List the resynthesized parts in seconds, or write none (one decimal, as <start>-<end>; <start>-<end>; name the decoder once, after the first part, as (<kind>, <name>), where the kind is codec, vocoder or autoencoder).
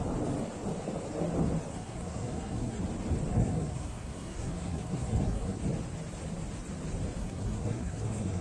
1.7-2.8 (codec, SNAC); 3.3-5.6; 7.2-8.4